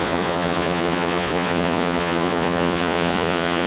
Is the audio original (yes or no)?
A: no